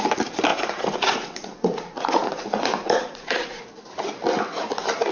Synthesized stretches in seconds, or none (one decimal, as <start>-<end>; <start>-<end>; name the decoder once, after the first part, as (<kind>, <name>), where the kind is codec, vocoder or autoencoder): 0.5-3.6 (vocoder, Vocos)